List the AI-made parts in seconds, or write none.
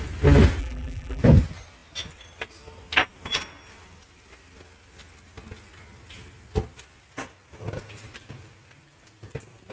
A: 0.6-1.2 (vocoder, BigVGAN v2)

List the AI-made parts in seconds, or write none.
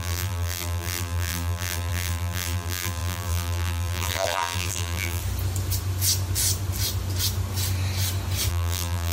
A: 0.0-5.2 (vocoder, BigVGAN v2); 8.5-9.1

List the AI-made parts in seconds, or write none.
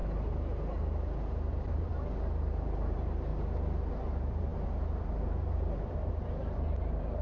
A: 1.5-1.9 (vocoder, BigVGAN v2); 2.5-3.3; 3.9-7.2